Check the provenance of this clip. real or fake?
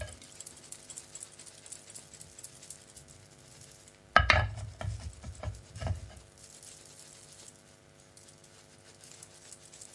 real